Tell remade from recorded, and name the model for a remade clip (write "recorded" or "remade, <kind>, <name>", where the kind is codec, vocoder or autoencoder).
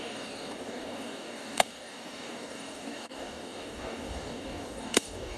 remade, codec, DAC